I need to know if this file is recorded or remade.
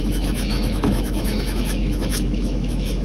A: remade